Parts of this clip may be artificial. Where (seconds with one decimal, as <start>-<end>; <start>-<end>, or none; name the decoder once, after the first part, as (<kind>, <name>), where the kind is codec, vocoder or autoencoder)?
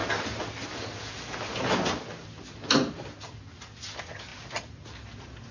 none